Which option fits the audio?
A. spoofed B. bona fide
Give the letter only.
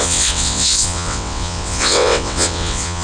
A